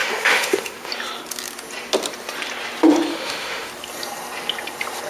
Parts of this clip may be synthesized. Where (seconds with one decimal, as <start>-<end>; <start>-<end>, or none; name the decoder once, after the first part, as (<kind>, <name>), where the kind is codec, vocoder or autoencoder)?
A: 0.0-0.9 (autoencoder, DAC-VAE); 3.1-3.7